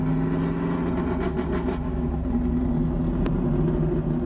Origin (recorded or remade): recorded